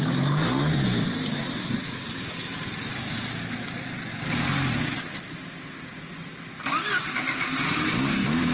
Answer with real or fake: real